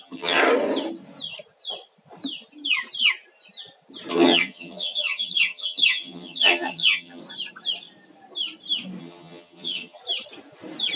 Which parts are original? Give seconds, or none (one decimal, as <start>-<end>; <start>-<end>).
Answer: 0.4-4.1; 7.2-9.0; 10.0-11.0